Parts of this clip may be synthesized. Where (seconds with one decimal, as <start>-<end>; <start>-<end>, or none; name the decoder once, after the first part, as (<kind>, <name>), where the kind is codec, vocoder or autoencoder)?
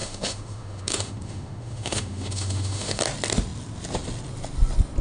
0.0-3.0 (autoencoder, DAC-VAE)